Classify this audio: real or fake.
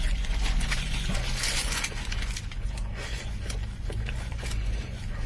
fake